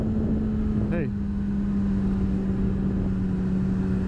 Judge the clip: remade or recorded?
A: recorded